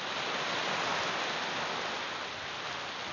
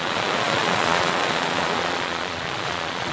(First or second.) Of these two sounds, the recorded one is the first